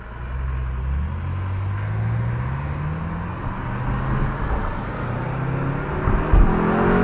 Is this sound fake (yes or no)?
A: no